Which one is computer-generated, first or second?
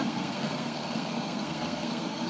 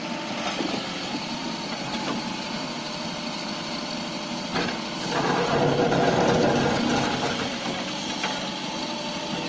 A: first